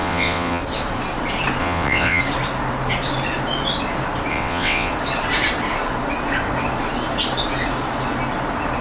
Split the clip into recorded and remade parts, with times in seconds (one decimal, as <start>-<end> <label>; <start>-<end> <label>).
0.0-0.6 remade; 0.6-1.6 recorded; 1.6-2.2 remade; 2.2-4.3 recorded; 4.3-4.9 remade; 4.9-8.8 recorded